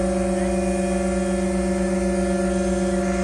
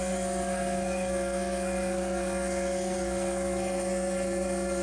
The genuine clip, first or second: first